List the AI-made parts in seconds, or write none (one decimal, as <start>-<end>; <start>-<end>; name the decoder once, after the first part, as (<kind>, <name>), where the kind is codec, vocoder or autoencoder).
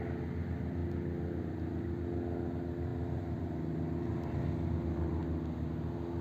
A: none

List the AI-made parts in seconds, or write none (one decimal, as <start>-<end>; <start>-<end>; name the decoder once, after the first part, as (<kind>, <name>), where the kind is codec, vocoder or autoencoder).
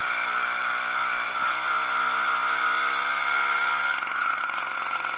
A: none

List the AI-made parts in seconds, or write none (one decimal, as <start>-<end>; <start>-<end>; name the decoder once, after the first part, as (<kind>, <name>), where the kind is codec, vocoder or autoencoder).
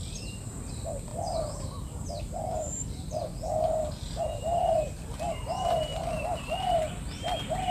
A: 0.0-3.3 (vocoder, BigVGAN v2); 4.2-5.9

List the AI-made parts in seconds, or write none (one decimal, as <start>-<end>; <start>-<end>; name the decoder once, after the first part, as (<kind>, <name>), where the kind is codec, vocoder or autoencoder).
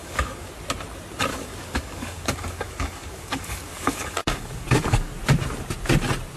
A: 0.0-0.5 (codec, DAC); 1.3-5.1